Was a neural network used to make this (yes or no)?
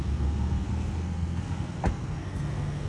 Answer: yes